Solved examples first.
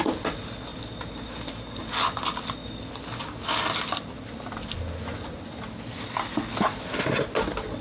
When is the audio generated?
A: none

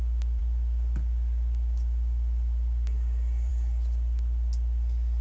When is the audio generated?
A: none

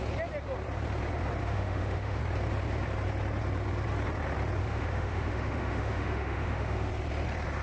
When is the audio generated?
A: 1.4-2.2; 4.6-6.9

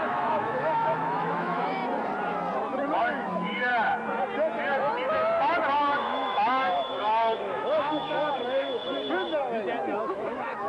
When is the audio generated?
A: 0.0-1.8; 3.0-3.7; 5.7-8.8; 10.1-10.7

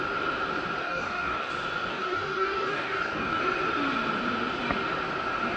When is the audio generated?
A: 0.8-1.5; 1.9-3.4